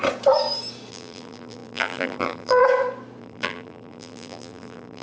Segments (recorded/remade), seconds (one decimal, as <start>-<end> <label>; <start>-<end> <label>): 0.0-0.9 recorded; 0.9-2.6 remade; 2.6-3.2 recorded; 3.2-5.0 remade